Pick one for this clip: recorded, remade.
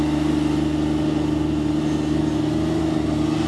recorded